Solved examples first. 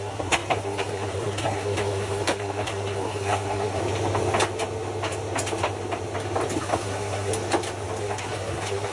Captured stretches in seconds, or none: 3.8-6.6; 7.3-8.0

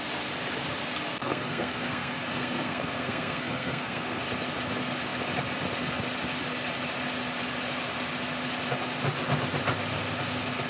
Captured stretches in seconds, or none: 0.0-1.2; 4.2-10.7

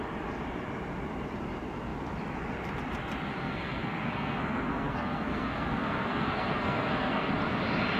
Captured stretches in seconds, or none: 0.0-3.3; 7.3-8.0

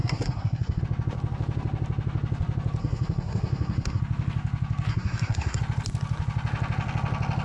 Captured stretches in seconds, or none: 0.8-2.8; 4.0-4.9; 5.6-7.4